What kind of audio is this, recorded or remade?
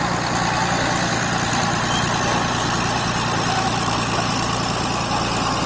recorded